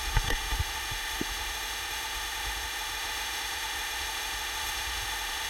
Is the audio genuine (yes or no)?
no